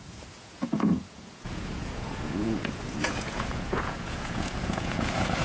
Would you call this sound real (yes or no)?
no